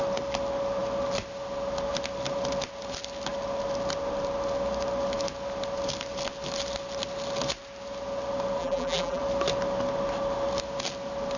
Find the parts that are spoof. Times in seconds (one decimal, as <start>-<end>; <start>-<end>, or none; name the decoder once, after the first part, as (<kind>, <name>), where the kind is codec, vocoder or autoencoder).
8.6-9.2 (vocoder, BigVGAN v2)